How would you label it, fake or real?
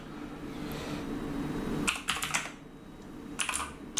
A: real